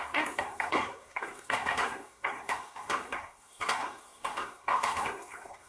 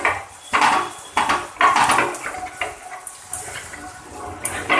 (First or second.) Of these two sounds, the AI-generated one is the first